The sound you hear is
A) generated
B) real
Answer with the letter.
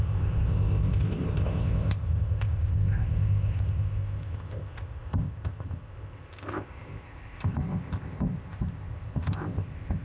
A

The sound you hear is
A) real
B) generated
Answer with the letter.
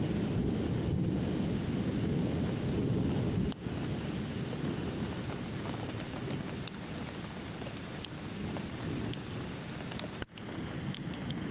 A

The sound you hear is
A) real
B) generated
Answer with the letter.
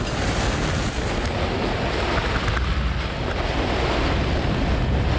A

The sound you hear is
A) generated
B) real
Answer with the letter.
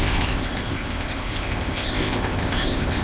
A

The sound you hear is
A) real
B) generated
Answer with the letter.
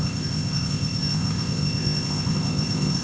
B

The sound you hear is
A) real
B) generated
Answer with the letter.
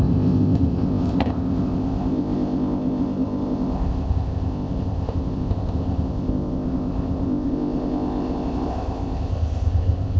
B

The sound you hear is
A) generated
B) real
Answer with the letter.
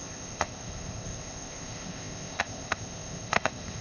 A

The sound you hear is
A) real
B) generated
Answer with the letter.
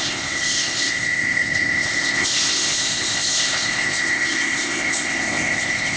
B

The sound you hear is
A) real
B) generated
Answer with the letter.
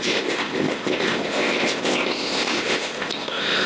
B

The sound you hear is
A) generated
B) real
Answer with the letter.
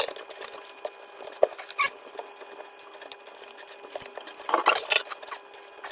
B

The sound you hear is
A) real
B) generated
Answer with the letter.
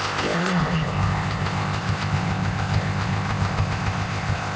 B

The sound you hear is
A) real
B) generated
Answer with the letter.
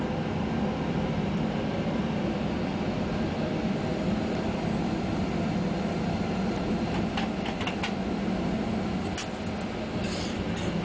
A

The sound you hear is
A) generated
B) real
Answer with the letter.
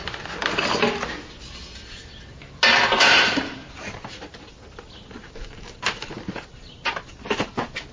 B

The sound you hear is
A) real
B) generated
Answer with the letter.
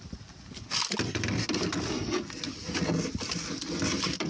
A